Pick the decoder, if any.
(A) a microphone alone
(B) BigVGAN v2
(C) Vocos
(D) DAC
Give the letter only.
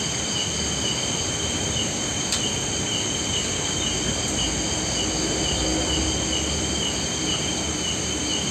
A